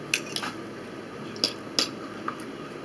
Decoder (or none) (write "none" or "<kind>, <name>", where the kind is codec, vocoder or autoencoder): none